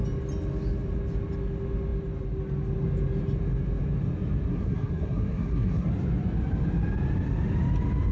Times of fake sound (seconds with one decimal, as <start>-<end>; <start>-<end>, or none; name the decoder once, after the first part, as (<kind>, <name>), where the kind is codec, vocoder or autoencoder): 4.5-5.9 (codec, SNAC)